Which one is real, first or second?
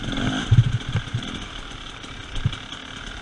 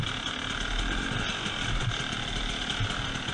second